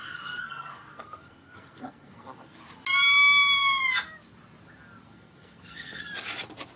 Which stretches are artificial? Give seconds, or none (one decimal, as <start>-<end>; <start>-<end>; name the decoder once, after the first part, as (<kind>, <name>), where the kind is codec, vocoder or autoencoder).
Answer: 0.0-2.6 (codec, SNAC); 5.1-6.0

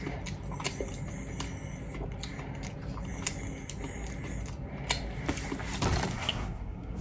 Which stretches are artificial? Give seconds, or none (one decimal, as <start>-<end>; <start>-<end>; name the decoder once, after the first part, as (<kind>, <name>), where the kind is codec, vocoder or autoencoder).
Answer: 6.1-7.0 (codec, SNAC)

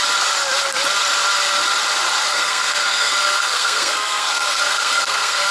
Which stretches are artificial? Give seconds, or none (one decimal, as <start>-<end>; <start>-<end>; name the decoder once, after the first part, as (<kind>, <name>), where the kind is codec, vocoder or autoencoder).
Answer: 2.2-5.5 (codec, SNAC)

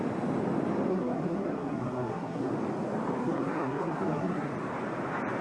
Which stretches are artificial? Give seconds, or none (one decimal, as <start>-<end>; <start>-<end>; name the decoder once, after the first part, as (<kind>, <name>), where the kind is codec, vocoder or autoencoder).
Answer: 0.9-2.5 (codec, SNAC); 3.2-4.5

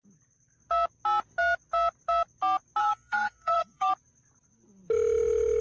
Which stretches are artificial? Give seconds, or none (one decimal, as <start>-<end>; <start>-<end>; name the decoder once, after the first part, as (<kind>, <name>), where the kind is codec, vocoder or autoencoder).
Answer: 2.8-3.9 (codec, SNAC)

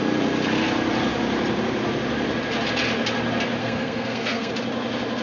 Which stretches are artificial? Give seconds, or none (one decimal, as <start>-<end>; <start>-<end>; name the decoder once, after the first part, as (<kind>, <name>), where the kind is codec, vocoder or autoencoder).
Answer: 3.6-4.5 (codec, SNAC)

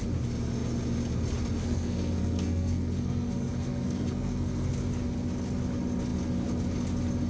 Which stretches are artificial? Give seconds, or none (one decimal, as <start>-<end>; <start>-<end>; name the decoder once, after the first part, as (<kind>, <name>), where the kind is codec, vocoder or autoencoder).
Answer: 1.6-4.7 (codec, SNAC)

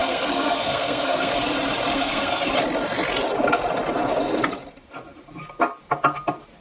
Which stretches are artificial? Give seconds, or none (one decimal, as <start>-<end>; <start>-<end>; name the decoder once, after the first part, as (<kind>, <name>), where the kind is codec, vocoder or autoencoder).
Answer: 0.0-1.3 (codec, SNAC); 1.9-2.5